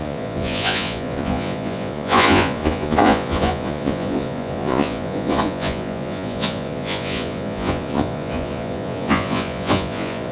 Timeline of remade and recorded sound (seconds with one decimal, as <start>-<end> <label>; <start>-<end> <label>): 0.0-10.3 remade